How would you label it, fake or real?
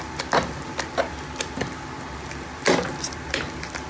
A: real